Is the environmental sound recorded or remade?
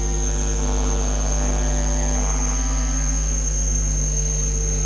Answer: remade